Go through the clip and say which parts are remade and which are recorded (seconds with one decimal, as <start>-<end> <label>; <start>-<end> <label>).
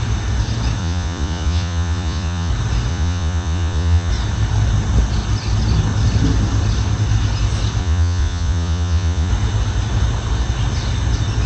0.0-0.8 recorded; 0.8-2.5 remade; 2.5-2.9 recorded; 2.9-4.1 remade; 4.1-7.8 recorded; 7.8-9.3 remade; 9.3-11.5 recorded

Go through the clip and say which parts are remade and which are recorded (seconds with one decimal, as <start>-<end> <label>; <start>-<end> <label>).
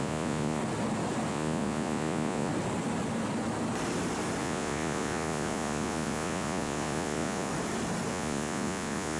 0.0-0.6 remade; 0.6-1.3 recorded; 1.3-2.5 remade; 2.5-4.4 recorded; 4.4-7.5 remade; 7.5-8.1 recorded; 8.1-9.2 remade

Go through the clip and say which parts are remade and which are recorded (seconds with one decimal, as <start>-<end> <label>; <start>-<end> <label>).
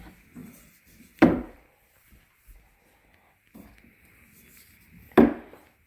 0.0-0.4 recorded; 0.4-2.4 remade; 2.4-5.9 recorded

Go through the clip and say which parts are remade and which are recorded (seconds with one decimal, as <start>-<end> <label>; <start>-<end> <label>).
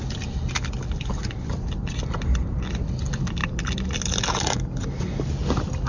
0.0-5.9 recorded